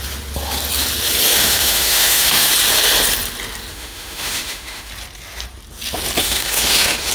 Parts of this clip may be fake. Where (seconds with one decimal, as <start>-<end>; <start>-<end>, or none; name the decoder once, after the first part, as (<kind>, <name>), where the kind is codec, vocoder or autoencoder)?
1.4-2.5 (autoencoder, DAC-VAE); 3.7-4.9; 6.2-7.1